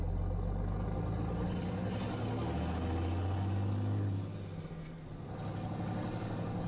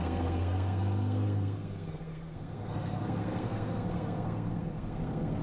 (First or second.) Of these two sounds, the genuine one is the first